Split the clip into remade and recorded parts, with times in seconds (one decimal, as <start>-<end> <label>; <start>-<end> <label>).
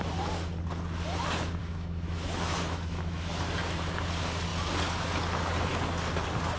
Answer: 0.0-1.6 recorded; 1.6-3.3 remade; 3.3-6.6 recorded